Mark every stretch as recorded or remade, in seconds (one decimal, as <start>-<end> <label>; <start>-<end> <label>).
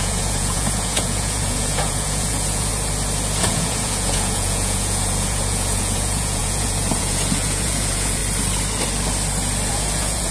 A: 0.0-2.7 remade; 2.7-3.4 recorded; 3.4-8.2 remade; 8.2-9.7 recorded; 9.7-10.3 remade